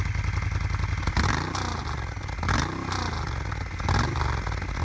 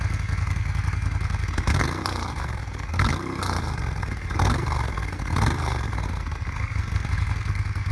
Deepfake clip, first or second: second